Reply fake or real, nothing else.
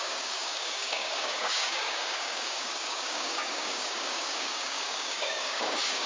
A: fake